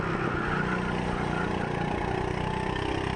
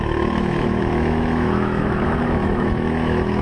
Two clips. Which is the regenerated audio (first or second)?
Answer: second